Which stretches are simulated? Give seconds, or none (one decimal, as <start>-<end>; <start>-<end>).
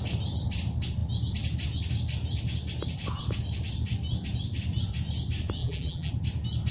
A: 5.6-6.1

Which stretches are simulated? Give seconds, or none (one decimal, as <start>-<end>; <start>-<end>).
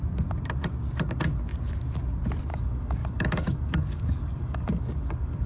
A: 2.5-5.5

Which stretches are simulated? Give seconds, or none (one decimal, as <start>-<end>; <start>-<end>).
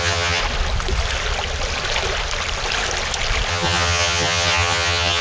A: 0.0-0.4; 3.5-5.2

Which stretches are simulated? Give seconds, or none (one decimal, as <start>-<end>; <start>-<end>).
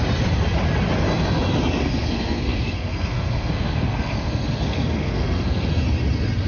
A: 1.8-5.7